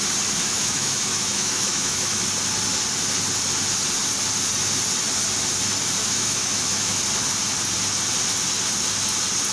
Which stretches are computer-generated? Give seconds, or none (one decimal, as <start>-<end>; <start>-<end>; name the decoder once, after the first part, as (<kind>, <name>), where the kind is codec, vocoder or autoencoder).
0.4-2.2 (autoencoder, DAC-VAE); 6.0-7.0